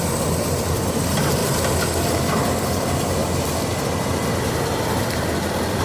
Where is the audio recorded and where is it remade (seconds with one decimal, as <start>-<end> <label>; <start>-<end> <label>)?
0.0-1.4 recorded; 1.4-2.3 remade; 2.3-5.8 recorded